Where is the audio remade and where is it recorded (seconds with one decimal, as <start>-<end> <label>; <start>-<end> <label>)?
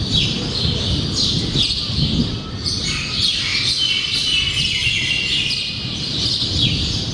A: 0.0-7.1 recorded